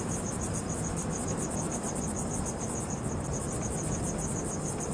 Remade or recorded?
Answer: recorded